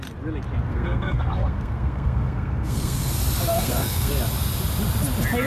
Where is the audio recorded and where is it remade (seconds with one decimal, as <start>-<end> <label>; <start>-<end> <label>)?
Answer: 0.0-0.7 recorded; 0.7-3.1 remade; 3.1-3.5 recorded; 3.5-4.1 remade; 4.1-5.5 recorded